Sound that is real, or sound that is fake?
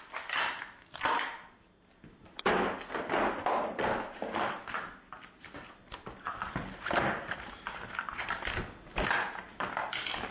real